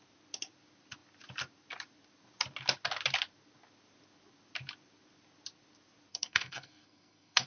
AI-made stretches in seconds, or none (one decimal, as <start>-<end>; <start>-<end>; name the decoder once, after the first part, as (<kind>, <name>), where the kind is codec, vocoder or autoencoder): 6.1-7.5 (codec, SNAC)